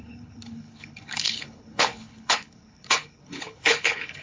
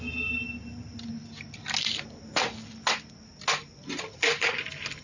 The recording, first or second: second